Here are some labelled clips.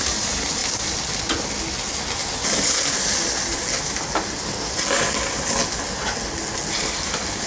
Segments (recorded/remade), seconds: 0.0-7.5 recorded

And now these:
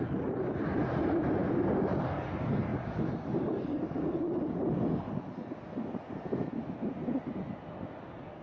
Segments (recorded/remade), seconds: 0.0-8.4 recorded

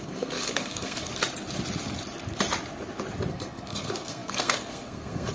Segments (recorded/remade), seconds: 0.0-1.1 remade; 1.1-3.3 recorded; 3.3-5.3 remade

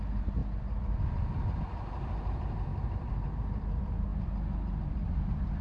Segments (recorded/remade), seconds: 0.0-0.4 remade; 0.4-1.6 recorded; 1.6-4.1 remade; 4.1-4.8 recorded; 4.8-5.6 remade

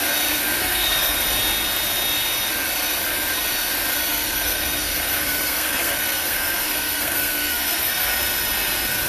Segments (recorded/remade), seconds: 0.0-0.6 recorded; 0.6-1.2 remade; 1.2-4.1 recorded; 4.1-8.1 remade; 8.1-9.1 recorded

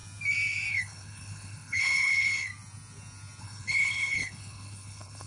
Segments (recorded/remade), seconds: 0.0-0.7 recorded; 0.7-2.5 remade; 2.5-3.4 recorded; 3.4-5.3 remade